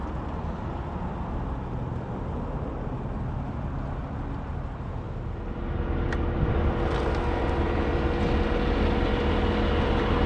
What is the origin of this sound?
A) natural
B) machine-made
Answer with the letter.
A